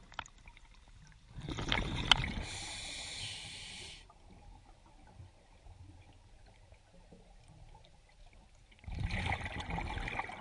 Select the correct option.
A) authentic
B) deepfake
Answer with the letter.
A